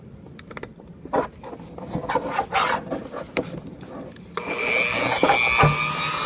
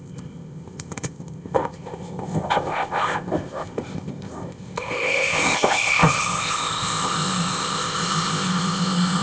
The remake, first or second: second